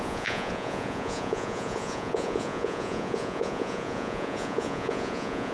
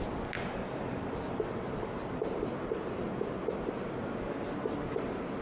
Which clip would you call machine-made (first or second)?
first